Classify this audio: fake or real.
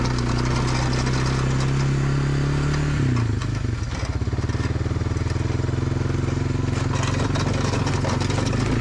real